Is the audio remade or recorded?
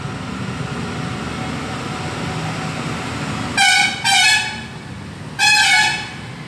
recorded